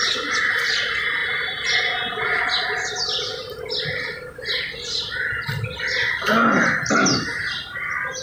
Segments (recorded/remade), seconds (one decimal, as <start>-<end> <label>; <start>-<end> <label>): 0.0-8.2 recorded